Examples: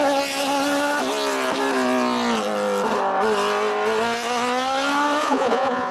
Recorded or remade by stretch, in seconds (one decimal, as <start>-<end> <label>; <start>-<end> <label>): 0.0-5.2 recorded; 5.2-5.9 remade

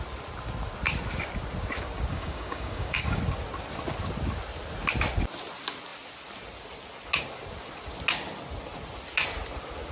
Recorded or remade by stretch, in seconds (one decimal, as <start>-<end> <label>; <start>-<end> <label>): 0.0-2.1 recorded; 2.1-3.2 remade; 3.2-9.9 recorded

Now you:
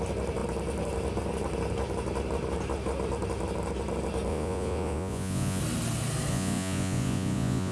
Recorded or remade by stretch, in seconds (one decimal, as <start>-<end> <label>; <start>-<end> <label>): 0.0-4.3 recorded; 4.3-5.6 remade; 5.6-6.3 recorded; 6.3-7.7 remade

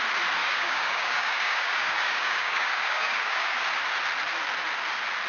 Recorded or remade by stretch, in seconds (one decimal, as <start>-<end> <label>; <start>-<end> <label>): 0.0-0.4 recorded; 0.4-3.6 remade; 3.6-5.3 recorded